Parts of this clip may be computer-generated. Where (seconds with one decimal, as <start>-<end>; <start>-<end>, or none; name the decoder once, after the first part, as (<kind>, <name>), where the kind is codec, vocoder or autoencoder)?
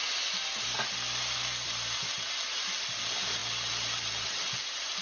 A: none